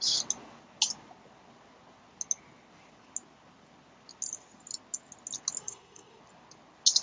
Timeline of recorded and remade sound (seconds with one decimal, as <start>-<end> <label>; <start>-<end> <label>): 0.0-5.6 recorded; 5.6-6.2 remade; 6.2-7.0 recorded